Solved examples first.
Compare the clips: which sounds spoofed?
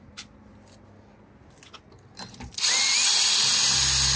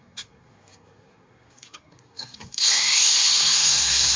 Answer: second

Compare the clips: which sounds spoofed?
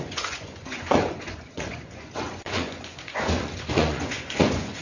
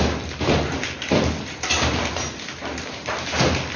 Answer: first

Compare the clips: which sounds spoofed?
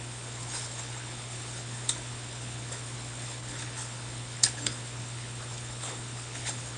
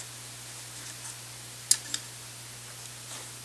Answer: first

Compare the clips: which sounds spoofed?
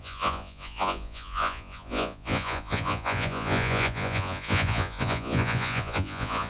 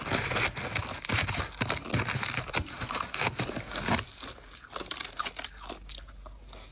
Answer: first